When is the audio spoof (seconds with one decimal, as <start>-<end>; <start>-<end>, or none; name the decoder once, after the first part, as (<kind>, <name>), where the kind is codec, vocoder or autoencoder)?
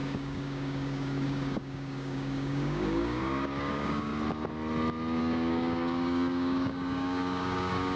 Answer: 0.0-4.1 (codec, DAC); 5.2-8.0